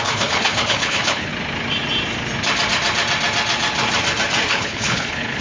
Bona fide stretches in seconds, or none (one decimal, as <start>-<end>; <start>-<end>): 1.3-4.5